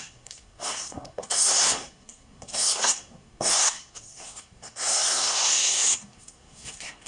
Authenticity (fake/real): fake